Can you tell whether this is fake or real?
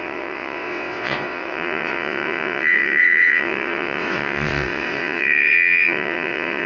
fake